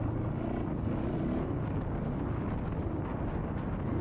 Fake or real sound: real